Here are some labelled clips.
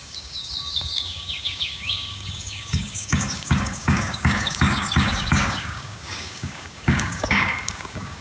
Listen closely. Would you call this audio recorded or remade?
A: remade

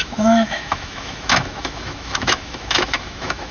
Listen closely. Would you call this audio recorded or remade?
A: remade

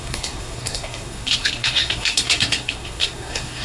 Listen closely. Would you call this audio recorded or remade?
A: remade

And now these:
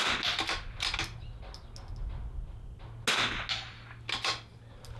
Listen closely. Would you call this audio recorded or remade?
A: recorded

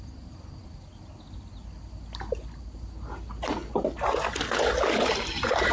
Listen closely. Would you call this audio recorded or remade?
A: recorded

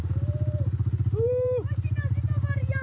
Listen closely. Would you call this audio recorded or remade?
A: remade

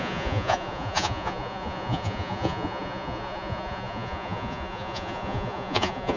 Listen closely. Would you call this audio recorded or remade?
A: remade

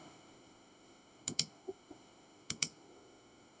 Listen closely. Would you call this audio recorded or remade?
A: remade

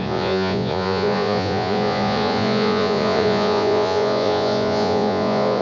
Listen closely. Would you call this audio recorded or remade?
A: remade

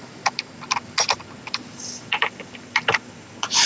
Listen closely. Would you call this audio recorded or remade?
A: recorded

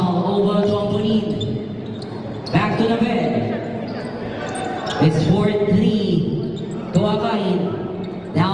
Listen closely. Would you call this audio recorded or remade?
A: recorded